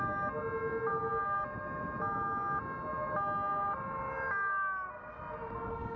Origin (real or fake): real